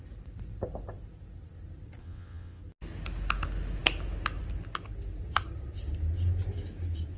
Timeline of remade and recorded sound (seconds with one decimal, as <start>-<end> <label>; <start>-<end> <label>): 0.0-2.0 recorded; 2.0-2.6 remade; 2.6-7.2 recorded